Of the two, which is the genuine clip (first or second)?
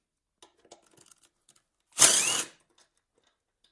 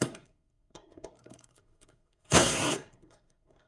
first